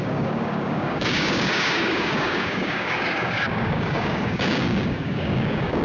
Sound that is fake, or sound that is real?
fake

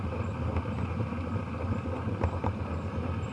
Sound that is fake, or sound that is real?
real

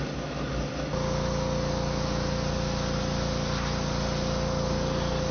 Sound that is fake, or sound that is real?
real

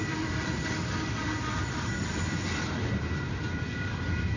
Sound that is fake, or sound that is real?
real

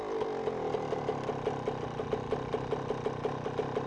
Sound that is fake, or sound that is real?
real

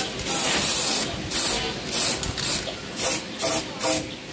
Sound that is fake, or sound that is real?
real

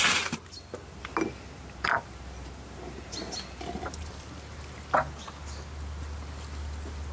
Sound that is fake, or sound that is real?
real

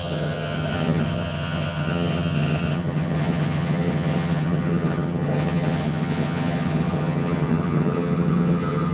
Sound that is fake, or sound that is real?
fake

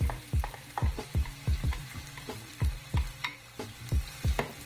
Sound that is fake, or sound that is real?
fake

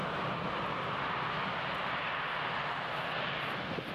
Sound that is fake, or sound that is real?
real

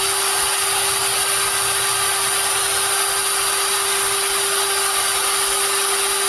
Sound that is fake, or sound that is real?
real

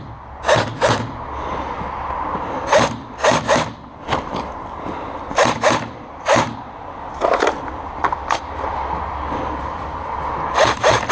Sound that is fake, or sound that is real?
real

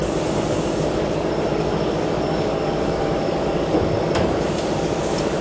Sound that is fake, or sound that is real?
fake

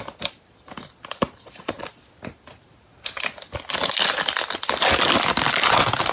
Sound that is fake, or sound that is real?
real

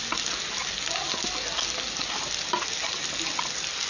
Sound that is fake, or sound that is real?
real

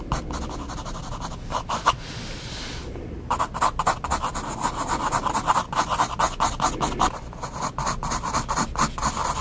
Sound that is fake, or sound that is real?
real